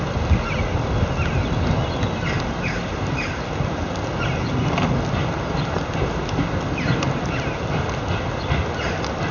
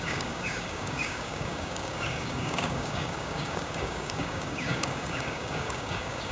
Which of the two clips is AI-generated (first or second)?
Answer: second